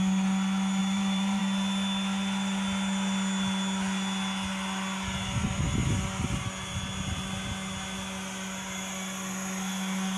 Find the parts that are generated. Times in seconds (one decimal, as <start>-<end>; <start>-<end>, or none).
0.8-1.4